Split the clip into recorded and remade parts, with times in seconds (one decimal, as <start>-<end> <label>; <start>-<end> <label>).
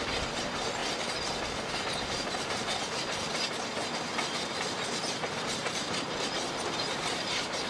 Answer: 0.0-0.8 remade; 0.8-2.1 recorded; 2.1-3.3 remade; 3.3-5.6 recorded; 5.6-7.7 remade